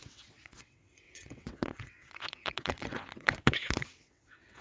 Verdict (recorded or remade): remade